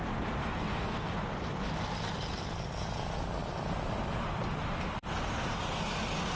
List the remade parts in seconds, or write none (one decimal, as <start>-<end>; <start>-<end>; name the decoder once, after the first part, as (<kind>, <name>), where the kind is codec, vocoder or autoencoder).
0.4-1.1 (codec, SNAC)